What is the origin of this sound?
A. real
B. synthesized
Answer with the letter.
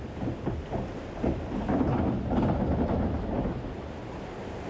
A